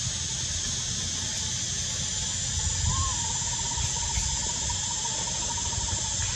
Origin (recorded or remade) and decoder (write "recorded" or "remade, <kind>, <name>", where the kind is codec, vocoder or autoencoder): recorded